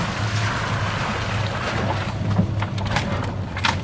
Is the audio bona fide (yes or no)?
yes